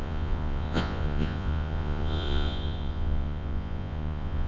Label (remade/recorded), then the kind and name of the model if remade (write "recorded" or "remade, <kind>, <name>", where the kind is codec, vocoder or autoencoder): remade, vocoder, Vocos